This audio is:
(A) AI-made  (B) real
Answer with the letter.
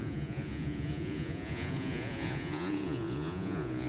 A